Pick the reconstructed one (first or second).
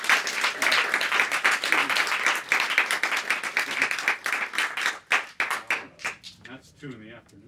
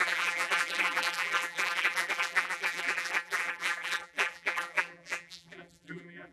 second